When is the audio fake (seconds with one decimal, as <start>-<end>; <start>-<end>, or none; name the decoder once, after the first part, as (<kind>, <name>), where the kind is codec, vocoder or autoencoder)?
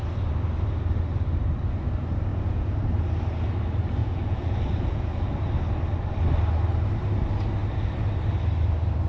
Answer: 2.3-2.8 (vocoder, Vocos); 4.0-5.3